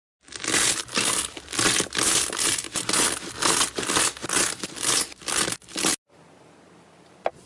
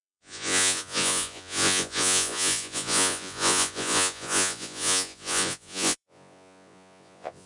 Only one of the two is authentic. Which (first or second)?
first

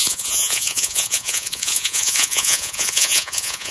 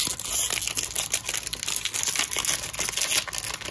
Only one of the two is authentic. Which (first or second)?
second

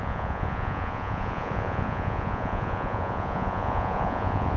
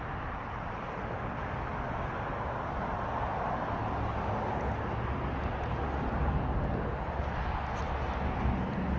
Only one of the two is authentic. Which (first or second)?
second